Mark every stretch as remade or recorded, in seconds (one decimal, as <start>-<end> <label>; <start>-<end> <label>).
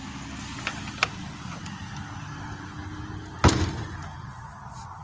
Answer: 0.0-5.0 recorded